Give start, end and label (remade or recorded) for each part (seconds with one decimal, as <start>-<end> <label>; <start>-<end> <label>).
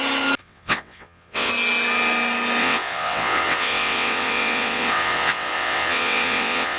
0.0-0.4 recorded; 0.4-1.5 remade; 1.5-2.6 recorded; 2.6-6.8 remade